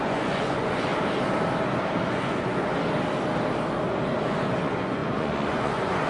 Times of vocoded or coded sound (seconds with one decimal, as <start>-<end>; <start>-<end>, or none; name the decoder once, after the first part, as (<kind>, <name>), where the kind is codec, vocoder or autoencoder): 0.0-0.9 (vocoder, Vocos); 2.1-2.7; 4.2-6.1